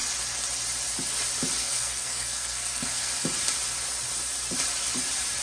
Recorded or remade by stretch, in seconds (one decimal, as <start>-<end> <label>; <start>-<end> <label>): 0.0-1.6 recorded; 1.6-3.1 remade; 3.1-5.4 recorded